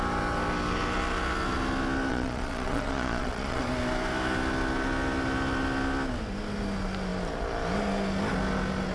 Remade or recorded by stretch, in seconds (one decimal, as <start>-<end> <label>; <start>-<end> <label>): 0.0-2.1 recorded; 2.1-3.6 remade; 3.6-8.9 recorded